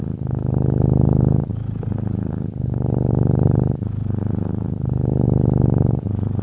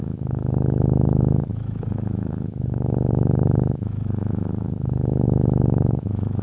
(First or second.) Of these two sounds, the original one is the first